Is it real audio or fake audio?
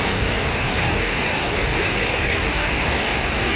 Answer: fake